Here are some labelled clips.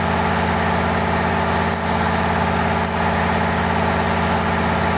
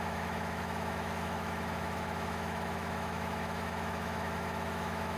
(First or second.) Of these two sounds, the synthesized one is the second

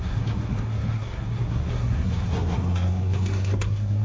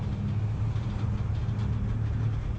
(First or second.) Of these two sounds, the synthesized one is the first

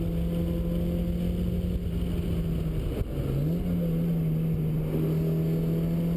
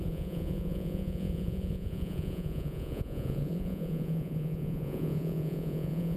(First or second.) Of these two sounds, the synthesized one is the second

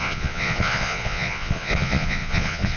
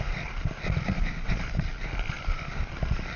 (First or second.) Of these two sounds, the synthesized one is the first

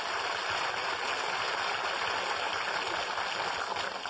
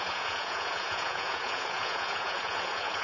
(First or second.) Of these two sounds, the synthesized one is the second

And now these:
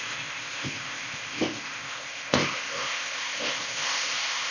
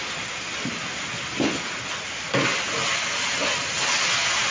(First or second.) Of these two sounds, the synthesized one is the first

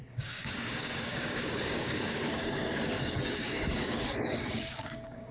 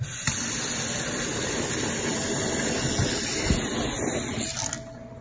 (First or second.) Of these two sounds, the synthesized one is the first